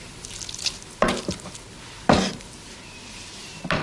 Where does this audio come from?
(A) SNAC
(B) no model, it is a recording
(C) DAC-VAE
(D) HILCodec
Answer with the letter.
B